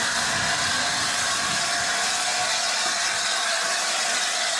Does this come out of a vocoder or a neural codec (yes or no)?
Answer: no